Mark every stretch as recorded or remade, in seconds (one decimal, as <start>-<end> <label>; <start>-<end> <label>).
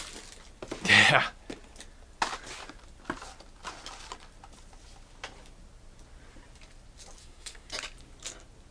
0.0-7.2 recorded; 7.2-7.7 remade; 7.7-8.7 recorded